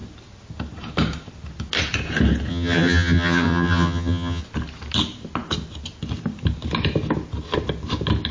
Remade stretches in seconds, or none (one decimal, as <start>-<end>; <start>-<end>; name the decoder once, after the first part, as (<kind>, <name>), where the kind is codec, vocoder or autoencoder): 2.5-4.4 (vocoder, HiFi-GAN)